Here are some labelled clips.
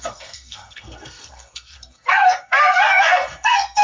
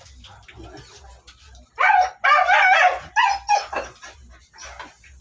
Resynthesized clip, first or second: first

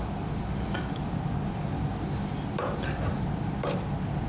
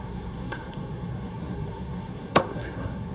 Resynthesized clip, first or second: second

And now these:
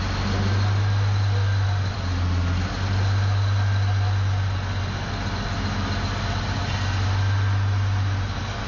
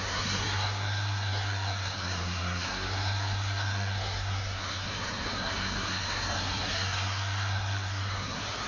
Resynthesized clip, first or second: second